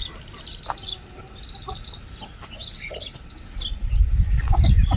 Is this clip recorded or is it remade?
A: recorded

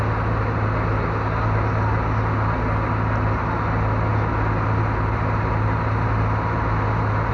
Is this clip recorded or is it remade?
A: recorded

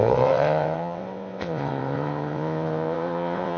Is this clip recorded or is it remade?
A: remade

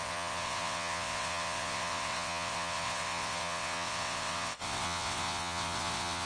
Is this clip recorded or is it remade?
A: remade